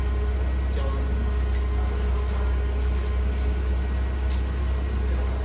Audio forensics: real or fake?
real